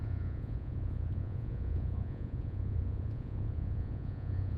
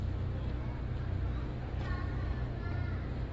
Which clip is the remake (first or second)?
first